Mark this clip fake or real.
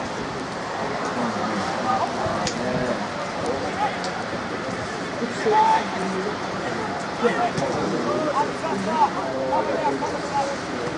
fake